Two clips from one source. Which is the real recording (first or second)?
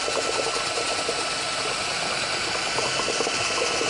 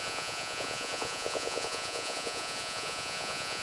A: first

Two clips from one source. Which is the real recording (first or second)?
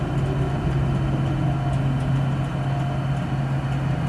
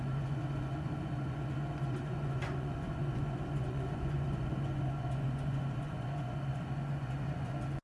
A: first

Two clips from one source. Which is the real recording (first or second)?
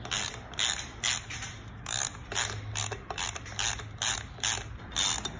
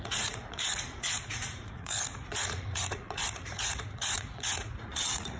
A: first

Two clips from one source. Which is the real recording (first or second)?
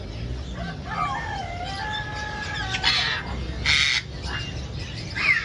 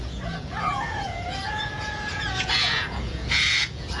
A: first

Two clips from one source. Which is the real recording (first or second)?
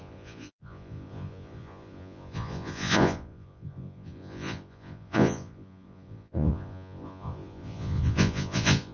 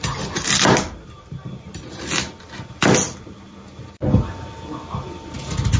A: second